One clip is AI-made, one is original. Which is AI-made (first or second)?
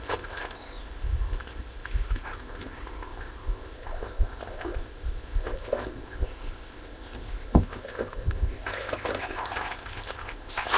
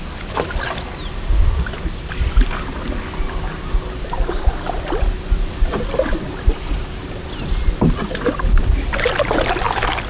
first